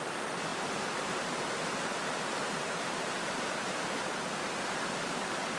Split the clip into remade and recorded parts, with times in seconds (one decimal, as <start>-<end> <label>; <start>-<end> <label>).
0.0-0.5 recorded; 0.5-3.9 remade; 3.9-5.6 recorded